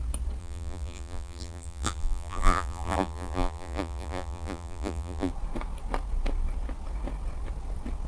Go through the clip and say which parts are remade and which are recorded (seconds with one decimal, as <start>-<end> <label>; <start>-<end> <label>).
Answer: 0.0-0.4 recorded; 0.4-5.3 remade; 5.3-8.1 recorded

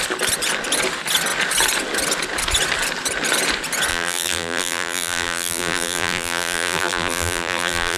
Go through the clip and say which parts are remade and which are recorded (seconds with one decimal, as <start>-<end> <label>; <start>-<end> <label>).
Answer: 0.0-3.9 recorded; 3.9-8.0 remade

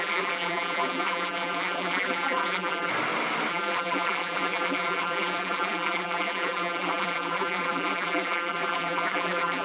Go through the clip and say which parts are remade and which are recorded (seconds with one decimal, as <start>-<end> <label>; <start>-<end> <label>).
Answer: 0.0-2.9 remade; 2.9-3.5 recorded; 3.5-9.6 remade

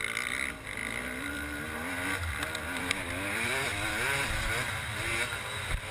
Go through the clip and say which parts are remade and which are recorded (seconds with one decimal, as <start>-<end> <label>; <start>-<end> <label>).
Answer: 0.0-0.8 remade; 0.8-2.8 recorded; 2.8-3.7 remade; 3.7-5.9 recorded

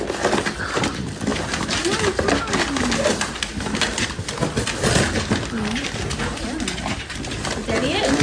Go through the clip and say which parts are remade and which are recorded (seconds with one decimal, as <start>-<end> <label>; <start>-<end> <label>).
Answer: 0.0-8.2 recorded

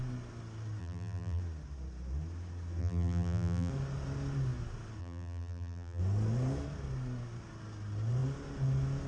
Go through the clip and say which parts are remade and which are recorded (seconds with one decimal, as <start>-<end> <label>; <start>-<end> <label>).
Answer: 0.0-0.8 recorded; 0.8-1.4 remade; 1.4-2.8 recorded; 2.8-3.7 remade; 3.7-5.0 recorded; 5.0-6.0 remade; 6.0-9.1 recorded

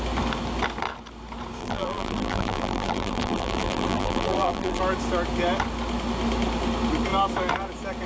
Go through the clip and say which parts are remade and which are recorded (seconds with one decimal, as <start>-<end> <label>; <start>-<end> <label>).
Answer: 0.0-1.6 recorded; 1.6-4.8 remade; 4.8-8.1 recorded